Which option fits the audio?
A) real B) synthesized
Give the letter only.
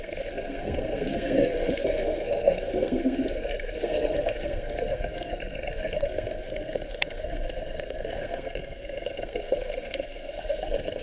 B